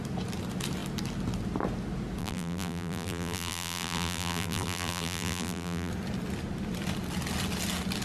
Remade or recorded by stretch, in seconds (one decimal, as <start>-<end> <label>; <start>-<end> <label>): 0.0-2.2 recorded; 2.2-5.9 remade; 5.9-8.0 recorded